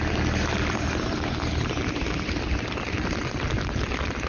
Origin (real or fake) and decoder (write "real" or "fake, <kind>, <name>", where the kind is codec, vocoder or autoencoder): real